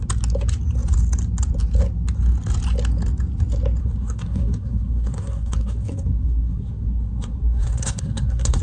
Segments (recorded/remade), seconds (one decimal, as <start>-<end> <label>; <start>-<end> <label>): 0.0-3.8 recorded; 3.8-8.6 remade